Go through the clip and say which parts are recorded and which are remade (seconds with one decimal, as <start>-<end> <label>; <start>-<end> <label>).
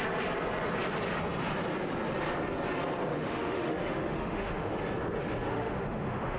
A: 0.0-3.1 recorded; 3.1-4.7 remade; 4.7-5.5 recorded; 5.5-6.4 remade